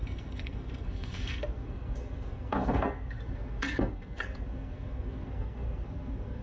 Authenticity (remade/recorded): remade